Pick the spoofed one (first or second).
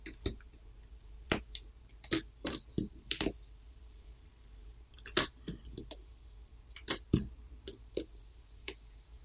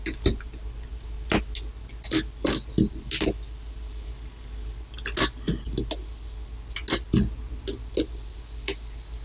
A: first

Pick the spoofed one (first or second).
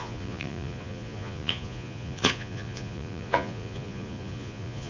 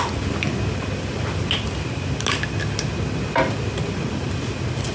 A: first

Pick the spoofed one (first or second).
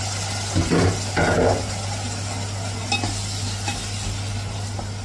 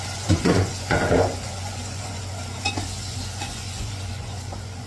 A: second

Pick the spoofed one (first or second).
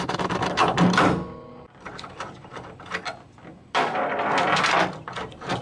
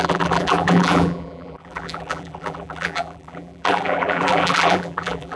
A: second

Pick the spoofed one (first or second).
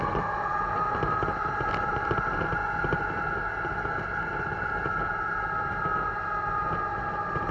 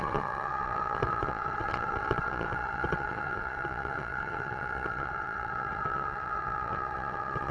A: second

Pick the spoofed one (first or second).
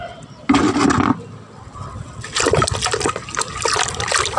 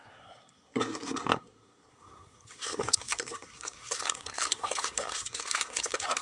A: second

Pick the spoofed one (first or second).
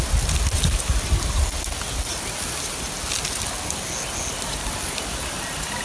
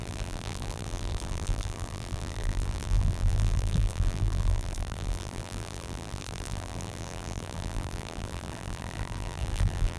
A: second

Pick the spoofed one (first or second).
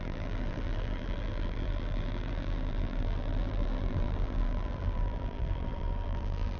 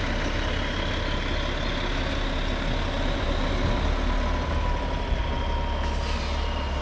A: first